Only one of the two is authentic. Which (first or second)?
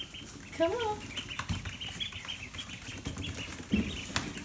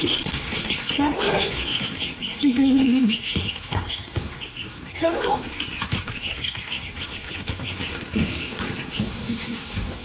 first